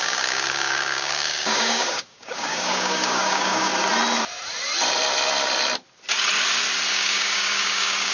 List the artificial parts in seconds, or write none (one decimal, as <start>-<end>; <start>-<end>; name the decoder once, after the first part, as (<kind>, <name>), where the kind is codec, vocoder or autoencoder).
0.0-3.7 (codec, DAC); 6.9-8.1